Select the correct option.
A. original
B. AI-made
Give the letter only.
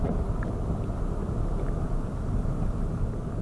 A